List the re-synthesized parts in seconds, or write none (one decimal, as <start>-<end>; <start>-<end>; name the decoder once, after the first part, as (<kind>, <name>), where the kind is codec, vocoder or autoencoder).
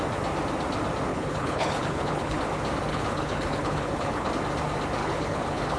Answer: 1.1-2.4 (codec, HILCodec); 2.9-4.3; 5.0-5.8